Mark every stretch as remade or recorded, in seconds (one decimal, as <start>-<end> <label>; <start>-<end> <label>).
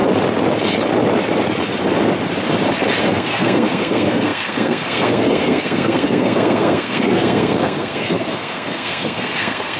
0.0-3.0 recorded; 3.0-9.8 remade